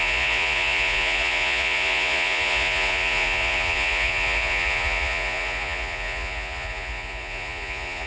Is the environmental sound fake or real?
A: fake